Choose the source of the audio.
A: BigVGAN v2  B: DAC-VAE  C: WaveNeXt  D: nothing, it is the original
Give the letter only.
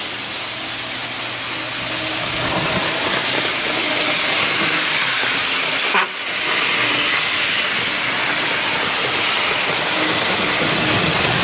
D